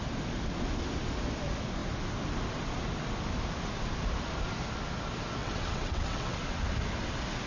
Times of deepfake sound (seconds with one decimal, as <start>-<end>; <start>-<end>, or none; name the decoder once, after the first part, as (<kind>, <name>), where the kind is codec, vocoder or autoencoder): 5.4-6.4 (vocoder, WaveNeXt)